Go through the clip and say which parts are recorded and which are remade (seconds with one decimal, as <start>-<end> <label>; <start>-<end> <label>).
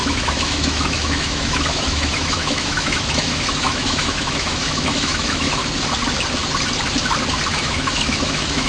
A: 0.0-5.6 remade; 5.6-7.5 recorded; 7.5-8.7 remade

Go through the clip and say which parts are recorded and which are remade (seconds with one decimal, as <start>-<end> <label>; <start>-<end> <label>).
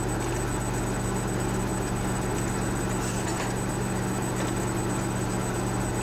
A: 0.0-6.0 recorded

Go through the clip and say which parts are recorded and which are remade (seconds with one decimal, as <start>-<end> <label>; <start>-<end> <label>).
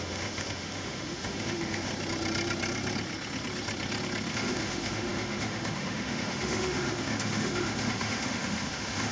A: 0.0-1.9 remade; 1.9-4.3 recorded; 4.3-9.1 remade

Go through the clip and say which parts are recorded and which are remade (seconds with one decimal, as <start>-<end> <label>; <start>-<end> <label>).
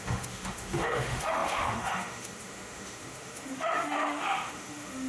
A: 0.0-5.1 remade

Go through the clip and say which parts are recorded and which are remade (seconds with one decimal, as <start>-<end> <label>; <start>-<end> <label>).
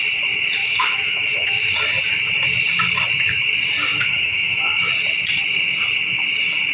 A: 0.0-0.6 recorded; 0.6-1.7 remade; 1.7-3.9 recorded; 3.9-4.9 remade; 4.9-6.7 recorded